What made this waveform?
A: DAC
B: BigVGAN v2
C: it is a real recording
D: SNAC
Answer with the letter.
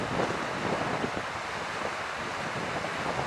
C